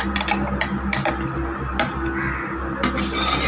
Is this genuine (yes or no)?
yes